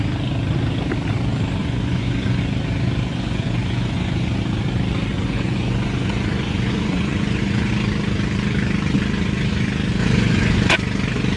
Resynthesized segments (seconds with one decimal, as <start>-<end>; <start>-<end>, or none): 1.6-2.4; 3.1-4.4; 5.1-7.7; 10.0-10.7